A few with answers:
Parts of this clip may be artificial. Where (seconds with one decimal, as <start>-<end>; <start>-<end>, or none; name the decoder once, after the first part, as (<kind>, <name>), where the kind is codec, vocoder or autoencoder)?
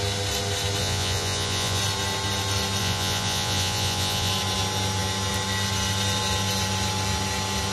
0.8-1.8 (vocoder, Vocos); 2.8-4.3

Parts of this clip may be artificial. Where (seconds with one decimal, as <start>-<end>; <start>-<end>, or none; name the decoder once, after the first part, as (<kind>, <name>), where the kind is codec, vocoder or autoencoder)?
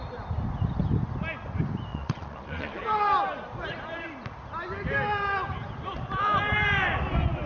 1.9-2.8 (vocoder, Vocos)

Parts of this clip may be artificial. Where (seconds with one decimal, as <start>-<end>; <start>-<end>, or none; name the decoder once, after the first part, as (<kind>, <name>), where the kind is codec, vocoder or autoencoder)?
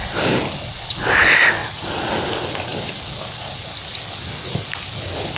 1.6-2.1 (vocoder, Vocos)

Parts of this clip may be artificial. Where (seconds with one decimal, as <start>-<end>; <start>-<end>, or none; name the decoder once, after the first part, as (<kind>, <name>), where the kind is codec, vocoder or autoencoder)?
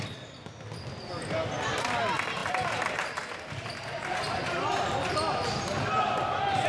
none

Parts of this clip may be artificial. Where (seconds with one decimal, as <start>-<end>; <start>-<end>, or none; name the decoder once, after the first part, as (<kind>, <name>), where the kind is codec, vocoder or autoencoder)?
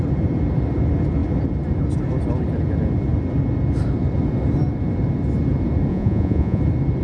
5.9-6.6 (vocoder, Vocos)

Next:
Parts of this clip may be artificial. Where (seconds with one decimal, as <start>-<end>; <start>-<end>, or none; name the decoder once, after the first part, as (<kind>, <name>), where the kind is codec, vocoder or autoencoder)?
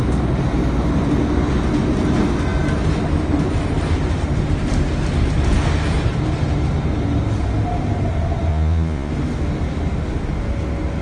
8.5-9.1 (vocoder, Vocos)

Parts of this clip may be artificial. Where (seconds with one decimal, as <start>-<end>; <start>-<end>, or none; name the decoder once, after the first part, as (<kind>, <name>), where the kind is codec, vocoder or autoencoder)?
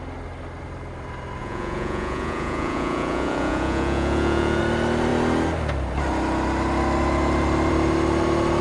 1.4-4.6 (vocoder, Vocos)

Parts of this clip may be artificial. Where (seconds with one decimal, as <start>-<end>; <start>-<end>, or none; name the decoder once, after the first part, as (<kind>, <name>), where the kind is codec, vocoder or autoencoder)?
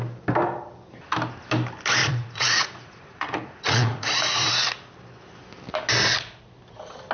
2.0-4.5 (vocoder, Vocos)